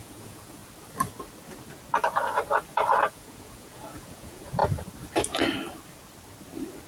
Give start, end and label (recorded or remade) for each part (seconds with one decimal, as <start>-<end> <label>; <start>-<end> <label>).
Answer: 0.0-0.6 remade; 0.6-3.1 recorded; 3.1-4.6 remade; 4.6-6.9 recorded